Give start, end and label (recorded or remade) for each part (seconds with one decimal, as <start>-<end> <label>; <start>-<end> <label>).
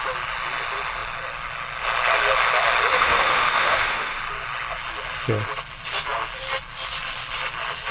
0.0-2.9 recorded; 2.9-4.2 remade; 4.2-7.9 recorded